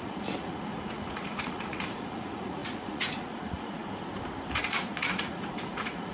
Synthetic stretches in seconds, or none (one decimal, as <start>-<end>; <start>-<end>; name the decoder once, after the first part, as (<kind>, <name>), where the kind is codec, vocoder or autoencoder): 0.0-3.8 (vocoder, Vocos); 4.5-6.1

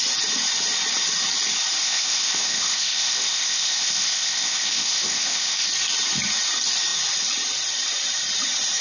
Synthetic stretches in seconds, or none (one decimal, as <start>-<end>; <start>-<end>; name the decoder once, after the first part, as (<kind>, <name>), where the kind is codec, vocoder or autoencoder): 1.8-5.7 (codec, ZipCodec)